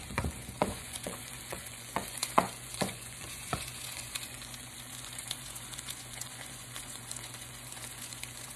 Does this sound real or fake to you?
fake